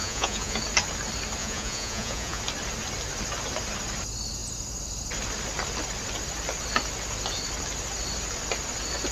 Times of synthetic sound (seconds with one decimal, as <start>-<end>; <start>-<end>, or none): 0.0-0.6; 1.4-2.4